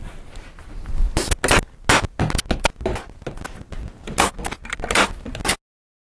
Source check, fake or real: real